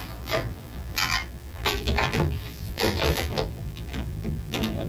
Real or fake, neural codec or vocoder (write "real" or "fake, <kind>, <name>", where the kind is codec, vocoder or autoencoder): fake, vocoder, BigVGAN v2